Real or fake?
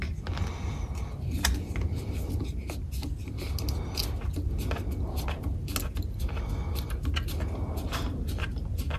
real